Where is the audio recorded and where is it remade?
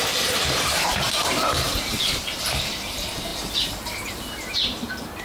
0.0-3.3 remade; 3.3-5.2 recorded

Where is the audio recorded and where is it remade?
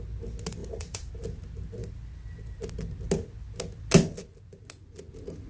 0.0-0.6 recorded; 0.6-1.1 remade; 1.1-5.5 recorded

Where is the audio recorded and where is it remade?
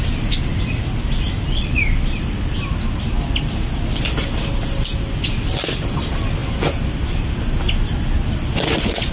0.0-9.1 recorded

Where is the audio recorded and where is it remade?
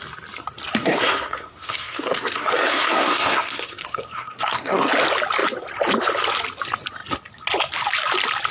0.0-0.8 recorded; 0.8-4.9 remade; 4.9-8.5 recorded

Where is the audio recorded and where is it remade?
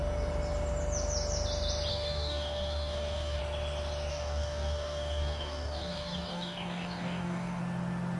0.0-1.9 recorded; 1.9-3.4 remade; 3.4-4.1 recorded; 4.1-7.6 remade; 7.6-8.2 recorded